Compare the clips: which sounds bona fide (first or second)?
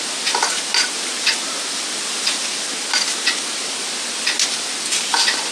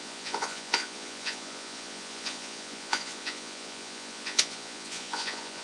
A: first